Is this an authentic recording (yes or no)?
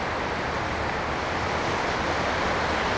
yes